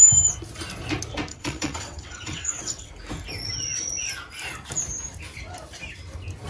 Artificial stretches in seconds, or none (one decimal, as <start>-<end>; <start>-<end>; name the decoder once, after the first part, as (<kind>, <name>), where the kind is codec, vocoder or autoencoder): 1.3-2.9 (vocoder, WaveNeXt)